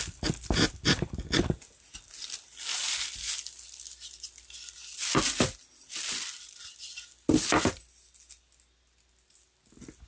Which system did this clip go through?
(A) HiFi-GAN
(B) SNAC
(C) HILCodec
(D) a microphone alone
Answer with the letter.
D